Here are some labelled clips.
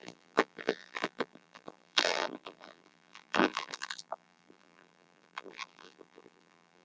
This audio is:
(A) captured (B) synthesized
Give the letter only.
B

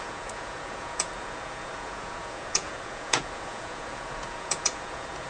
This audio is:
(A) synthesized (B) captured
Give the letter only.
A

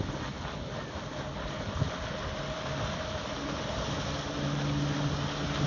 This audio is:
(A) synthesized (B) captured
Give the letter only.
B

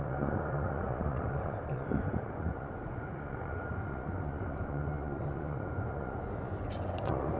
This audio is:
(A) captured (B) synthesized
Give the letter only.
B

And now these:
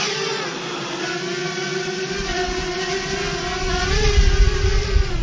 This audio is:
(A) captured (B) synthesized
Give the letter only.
A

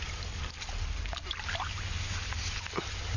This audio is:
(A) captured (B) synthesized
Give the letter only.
A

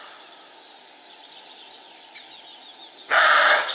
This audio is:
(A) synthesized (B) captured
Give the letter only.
B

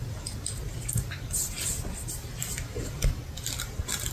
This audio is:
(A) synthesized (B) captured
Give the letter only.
B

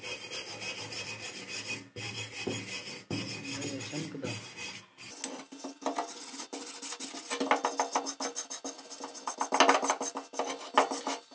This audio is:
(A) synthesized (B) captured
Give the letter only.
B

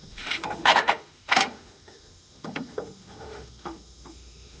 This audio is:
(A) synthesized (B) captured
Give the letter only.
A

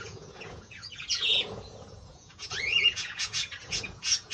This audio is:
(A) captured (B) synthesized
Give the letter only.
B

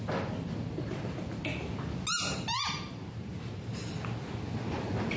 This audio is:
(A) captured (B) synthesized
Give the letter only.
A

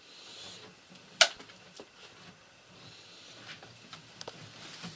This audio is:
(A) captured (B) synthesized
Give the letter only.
A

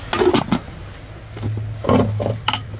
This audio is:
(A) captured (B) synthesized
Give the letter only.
A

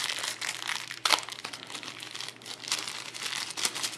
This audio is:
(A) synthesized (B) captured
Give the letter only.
B